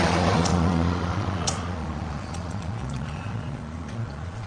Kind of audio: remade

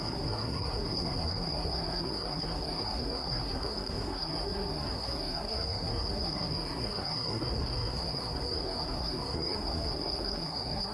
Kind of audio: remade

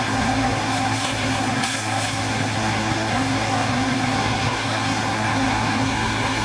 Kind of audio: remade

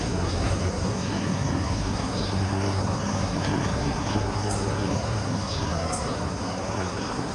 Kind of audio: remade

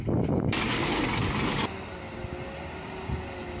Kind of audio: recorded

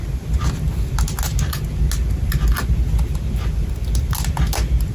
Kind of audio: recorded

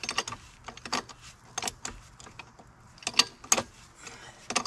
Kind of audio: recorded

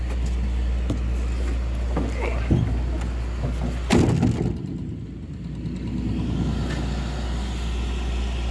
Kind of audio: recorded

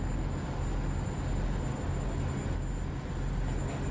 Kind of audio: recorded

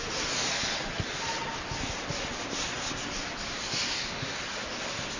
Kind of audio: recorded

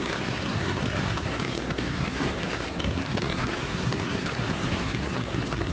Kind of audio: remade